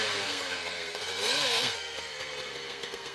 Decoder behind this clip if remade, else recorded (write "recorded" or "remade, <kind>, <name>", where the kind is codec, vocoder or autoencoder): remade, codec, SNAC